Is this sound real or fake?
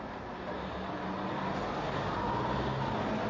real